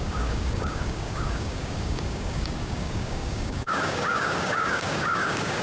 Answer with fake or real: fake